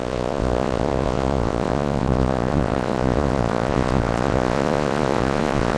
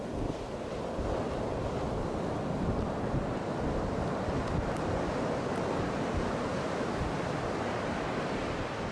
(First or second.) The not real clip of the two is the first